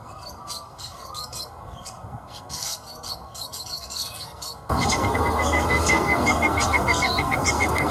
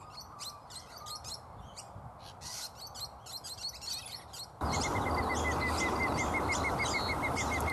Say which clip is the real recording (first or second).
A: second